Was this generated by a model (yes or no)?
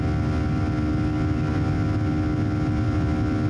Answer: no